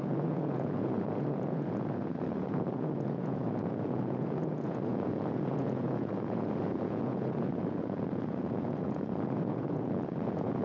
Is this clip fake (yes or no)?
yes